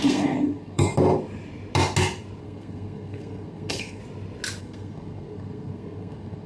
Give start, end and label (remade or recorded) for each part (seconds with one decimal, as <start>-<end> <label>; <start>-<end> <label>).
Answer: 0.0-0.9 remade; 0.9-2.4 recorded; 2.4-4.0 remade; 4.0-4.6 recorded; 4.6-6.5 remade